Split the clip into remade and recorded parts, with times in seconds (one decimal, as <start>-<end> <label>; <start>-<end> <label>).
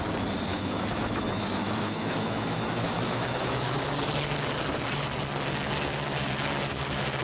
0.0-0.5 recorded; 0.5-3.8 remade; 3.8-7.2 recorded